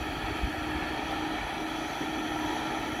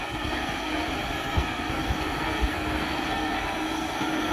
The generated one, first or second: second